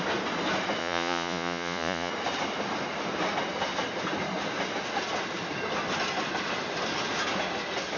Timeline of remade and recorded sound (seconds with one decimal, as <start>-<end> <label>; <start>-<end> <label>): 0.0-0.8 recorded; 0.8-2.1 remade; 2.1-8.0 recorded